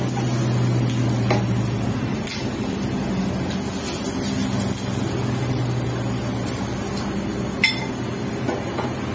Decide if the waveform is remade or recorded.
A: recorded